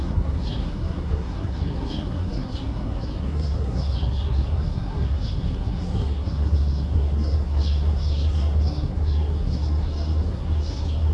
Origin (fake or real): fake